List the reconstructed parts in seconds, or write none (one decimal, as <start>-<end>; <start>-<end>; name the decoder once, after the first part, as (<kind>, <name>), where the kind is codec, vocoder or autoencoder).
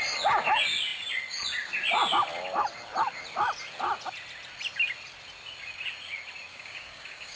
6.5-7.4 (codec, DAC)